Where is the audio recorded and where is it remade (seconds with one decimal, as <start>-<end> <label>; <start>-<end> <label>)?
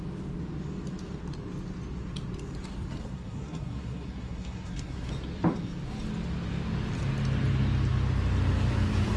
0.0-3.0 recorded; 3.0-5.1 remade; 5.1-9.2 recorded